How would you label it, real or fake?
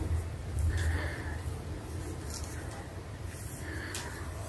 real